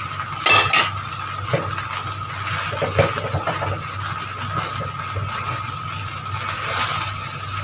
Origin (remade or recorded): recorded